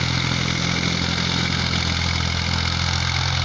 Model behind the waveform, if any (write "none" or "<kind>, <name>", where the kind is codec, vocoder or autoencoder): none